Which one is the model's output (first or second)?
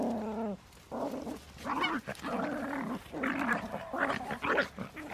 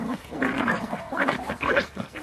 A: second